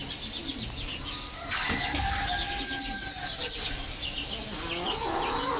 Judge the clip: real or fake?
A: real